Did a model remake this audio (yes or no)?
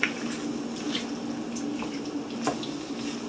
no